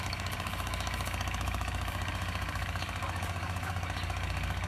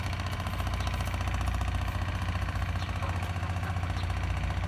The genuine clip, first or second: second